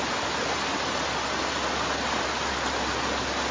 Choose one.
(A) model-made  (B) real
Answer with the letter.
B